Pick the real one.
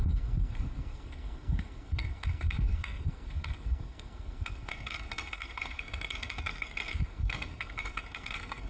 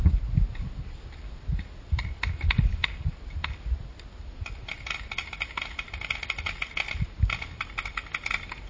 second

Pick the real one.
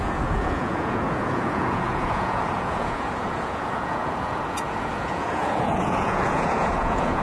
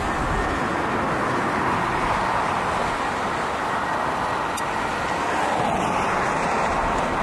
second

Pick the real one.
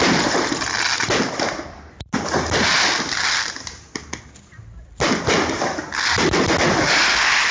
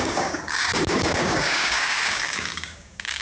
first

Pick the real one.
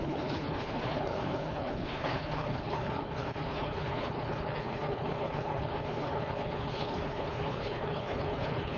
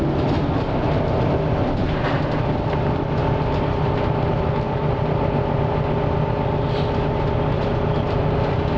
second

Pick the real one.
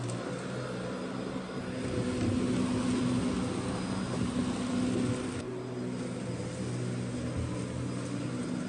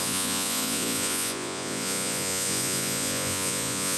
first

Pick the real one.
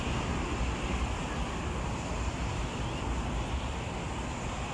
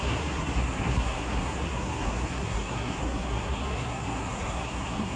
first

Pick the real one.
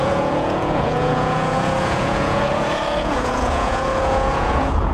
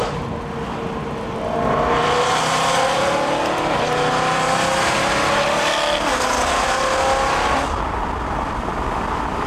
second